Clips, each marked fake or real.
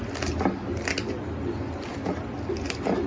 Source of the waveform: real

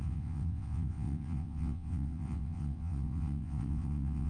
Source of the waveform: fake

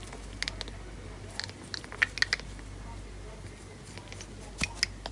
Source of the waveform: real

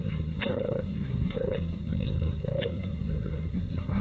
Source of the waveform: fake